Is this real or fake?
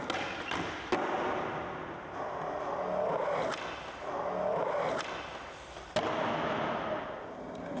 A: real